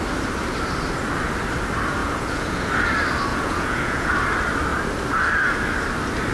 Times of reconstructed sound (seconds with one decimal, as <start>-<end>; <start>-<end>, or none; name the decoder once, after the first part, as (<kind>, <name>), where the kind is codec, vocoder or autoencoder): 2.0-2.7 (vocoder, Vocos); 3.3-4.1